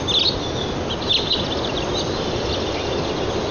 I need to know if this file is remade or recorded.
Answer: recorded